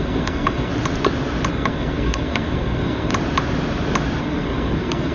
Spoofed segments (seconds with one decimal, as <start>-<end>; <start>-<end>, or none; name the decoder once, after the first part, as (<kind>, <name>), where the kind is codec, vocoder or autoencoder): 0.0-0.7 (codec, SNAC); 1.5-3.1; 4.2-5.1